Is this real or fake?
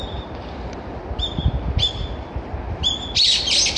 real